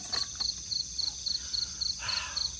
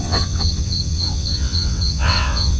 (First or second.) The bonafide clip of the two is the first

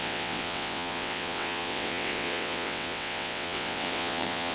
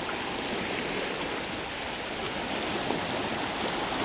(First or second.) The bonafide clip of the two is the second